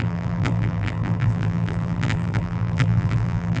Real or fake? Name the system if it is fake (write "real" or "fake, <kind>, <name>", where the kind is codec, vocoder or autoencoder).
fake, vocoder, BigVGAN v2